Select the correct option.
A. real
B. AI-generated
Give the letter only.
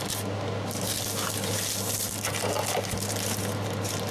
A